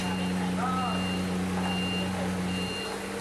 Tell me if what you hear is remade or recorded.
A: recorded